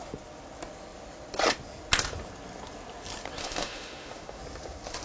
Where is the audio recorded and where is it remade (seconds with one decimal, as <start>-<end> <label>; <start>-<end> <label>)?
0.0-3.4 recorded; 3.4-4.4 remade; 4.4-5.0 recorded